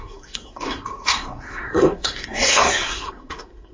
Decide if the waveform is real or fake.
fake